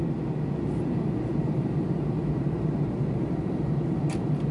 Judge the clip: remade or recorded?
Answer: recorded